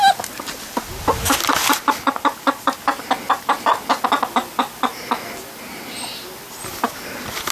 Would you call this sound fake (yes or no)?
no